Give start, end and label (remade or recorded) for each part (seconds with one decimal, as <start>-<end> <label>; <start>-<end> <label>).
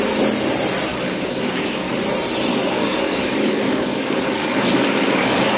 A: 0.0-0.9 recorded; 0.9-1.9 remade; 1.9-2.5 recorded; 2.5-5.6 remade